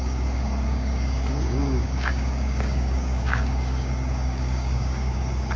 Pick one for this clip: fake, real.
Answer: fake